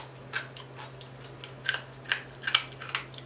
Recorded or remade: recorded